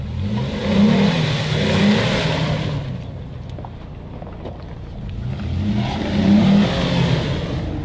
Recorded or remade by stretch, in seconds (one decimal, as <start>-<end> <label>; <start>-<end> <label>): 0.0-7.8 recorded